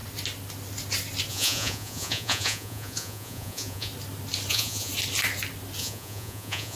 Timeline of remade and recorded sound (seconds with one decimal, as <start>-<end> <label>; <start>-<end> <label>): 0.0-1.3 recorded; 1.3-3.9 remade; 3.9-4.5 recorded; 4.5-4.9 remade; 4.9-5.8 recorded; 5.8-6.8 remade